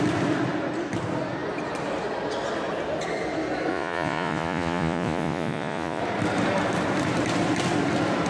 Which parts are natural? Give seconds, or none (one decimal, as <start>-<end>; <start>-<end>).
0.0-3.7; 6.0-8.3